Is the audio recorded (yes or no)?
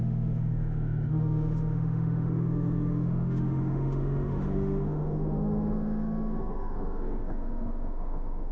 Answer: no